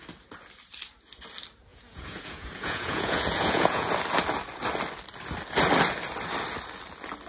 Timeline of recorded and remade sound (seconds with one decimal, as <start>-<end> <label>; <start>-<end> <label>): 0.0-1.7 recorded; 1.7-3.9 remade; 3.9-7.3 recorded